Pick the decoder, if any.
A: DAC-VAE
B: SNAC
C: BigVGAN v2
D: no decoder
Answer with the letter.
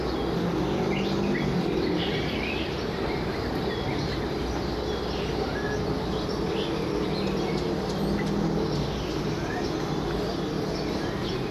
D